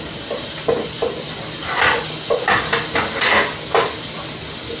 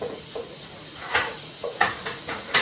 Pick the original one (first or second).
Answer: first